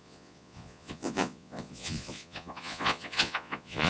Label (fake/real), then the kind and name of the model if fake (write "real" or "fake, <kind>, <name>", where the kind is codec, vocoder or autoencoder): fake, vocoder, Vocos